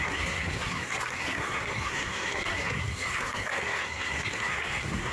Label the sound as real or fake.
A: fake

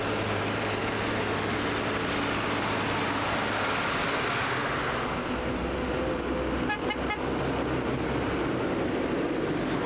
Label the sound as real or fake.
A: real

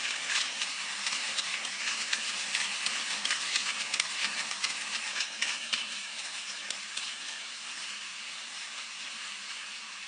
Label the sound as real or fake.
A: fake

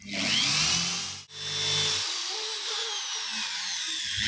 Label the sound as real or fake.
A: real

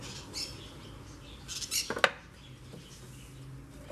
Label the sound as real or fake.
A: real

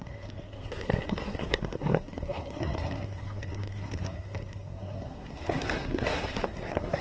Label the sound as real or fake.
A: fake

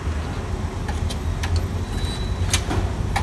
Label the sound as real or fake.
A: real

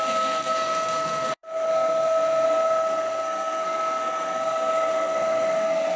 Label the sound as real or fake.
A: fake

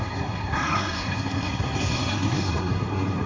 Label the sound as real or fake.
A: fake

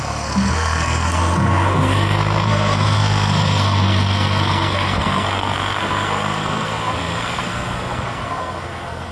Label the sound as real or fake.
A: fake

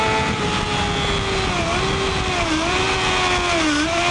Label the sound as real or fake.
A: real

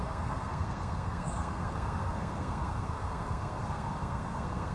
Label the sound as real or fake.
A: fake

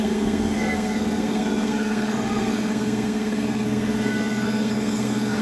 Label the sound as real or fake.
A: fake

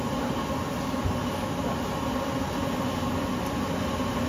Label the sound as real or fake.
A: real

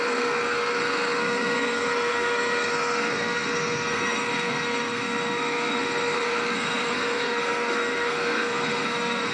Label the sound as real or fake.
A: fake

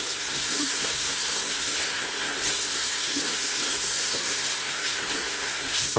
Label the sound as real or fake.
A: fake